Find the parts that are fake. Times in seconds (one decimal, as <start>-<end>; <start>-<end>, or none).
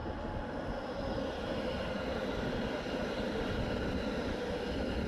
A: none